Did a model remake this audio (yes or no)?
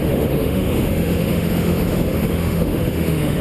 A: yes